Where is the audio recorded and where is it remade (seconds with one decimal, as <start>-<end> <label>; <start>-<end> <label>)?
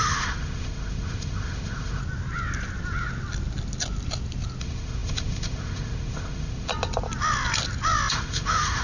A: 0.0-2.0 remade; 2.0-4.6 recorded; 4.6-6.7 remade; 6.7-8.1 recorded; 8.1-8.8 remade